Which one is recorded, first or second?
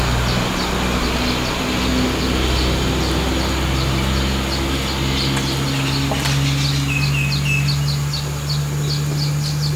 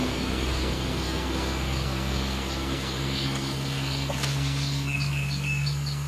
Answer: first